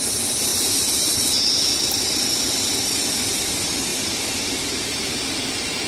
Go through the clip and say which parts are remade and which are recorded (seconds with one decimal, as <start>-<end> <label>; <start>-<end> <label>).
0.0-0.5 recorded; 0.5-1.7 remade; 1.7-3.9 recorded; 3.9-5.2 remade; 5.2-5.9 recorded